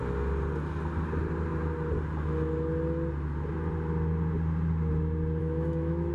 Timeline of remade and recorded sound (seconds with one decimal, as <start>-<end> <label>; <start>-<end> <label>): 0.0-5.4 recorded; 5.4-6.1 remade